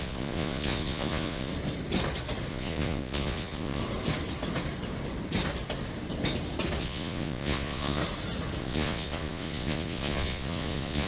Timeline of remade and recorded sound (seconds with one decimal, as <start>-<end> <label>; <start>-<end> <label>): 0.0-1.5 remade; 1.5-2.5 recorded; 2.5-3.8 remade; 3.8-6.8 recorded; 6.8-8.0 remade; 8.0-8.6 recorded; 8.6-11.1 remade